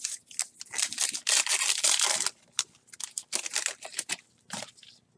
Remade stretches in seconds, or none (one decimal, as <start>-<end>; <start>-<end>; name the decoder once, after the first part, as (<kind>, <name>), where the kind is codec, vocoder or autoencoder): none